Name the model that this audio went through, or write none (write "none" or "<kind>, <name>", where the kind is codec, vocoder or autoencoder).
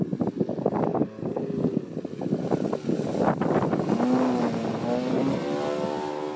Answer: none